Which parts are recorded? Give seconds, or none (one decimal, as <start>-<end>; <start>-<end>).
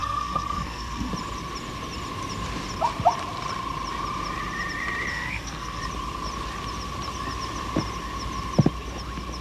1.1-5.1; 5.8-9.4